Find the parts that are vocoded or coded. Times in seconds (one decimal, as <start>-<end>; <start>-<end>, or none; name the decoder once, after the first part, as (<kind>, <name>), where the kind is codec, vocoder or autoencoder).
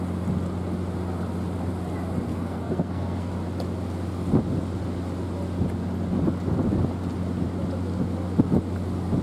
2.3-3.3 (codec, SNAC)